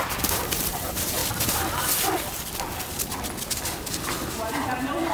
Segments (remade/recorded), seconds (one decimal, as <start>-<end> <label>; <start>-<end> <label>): 0.0-1.2 remade; 1.2-4.3 recorded; 4.3-5.1 remade